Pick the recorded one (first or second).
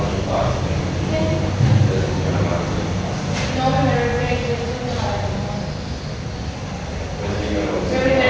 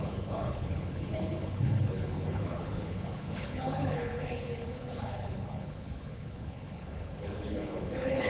first